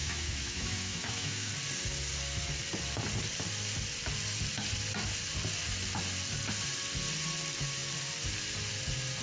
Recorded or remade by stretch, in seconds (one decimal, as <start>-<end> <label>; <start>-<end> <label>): 0.0-1.5 remade; 1.5-9.2 recorded